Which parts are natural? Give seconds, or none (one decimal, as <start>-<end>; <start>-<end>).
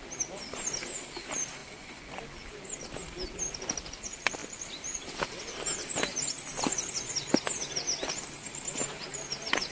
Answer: 0.0-1.6; 2.2-9.7